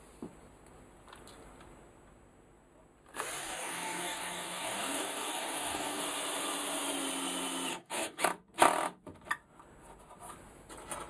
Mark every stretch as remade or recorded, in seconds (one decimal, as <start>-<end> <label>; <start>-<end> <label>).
0.0-3.4 recorded; 3.4-6.0 remade; 6.0-7.7 recorded; 7.7-8.2 remade; 8.2-11.1 recorded